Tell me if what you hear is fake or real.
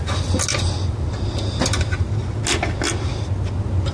real